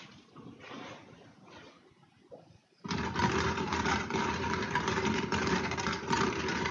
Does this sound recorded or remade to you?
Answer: remade